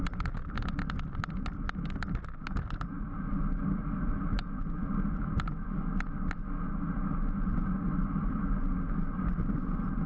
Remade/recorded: recorded